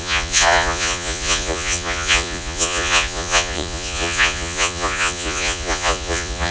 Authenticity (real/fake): fake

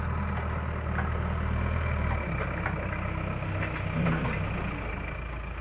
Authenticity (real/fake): real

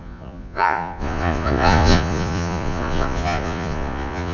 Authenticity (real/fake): fake